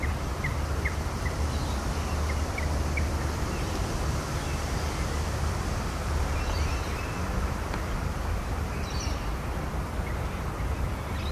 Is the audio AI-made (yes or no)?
yes